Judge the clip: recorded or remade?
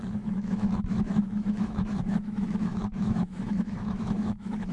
remade